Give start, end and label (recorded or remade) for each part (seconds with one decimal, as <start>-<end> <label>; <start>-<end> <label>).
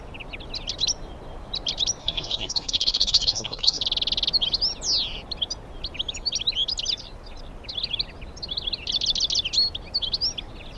0.0-2.0 recorded; 2.0-3.8 remade; 3.8-10.8 recorded